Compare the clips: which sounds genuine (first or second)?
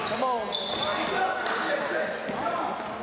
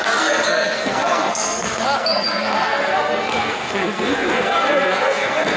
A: first